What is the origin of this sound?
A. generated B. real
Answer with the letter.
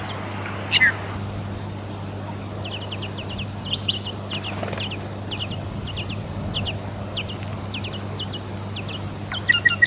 B